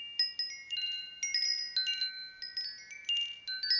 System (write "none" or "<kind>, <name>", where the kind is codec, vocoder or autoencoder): none